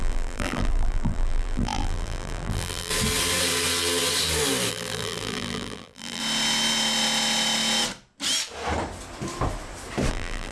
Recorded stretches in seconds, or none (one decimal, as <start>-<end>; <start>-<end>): 2.9-4.7; 6.2-10.1